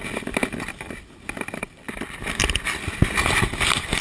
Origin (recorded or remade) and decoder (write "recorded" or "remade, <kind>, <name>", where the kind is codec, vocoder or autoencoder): recorded